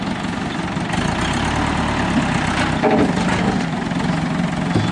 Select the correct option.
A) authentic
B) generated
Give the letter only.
A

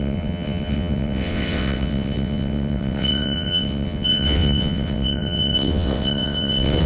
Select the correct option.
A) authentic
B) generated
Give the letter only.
B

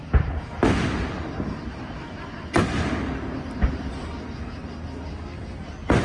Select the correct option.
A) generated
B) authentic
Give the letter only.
B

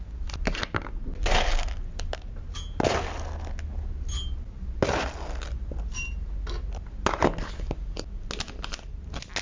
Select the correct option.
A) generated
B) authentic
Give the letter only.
B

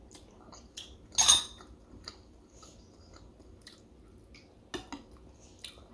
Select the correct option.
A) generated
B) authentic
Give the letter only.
B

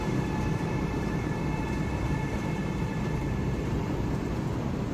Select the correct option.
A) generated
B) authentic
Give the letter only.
A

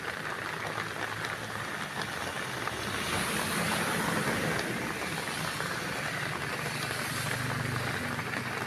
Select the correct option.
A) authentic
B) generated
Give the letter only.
A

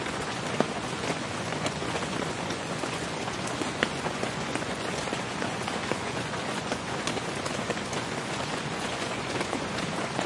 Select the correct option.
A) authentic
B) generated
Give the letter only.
B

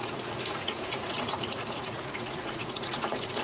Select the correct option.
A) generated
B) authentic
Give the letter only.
A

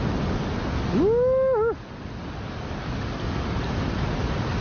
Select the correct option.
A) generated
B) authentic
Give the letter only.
B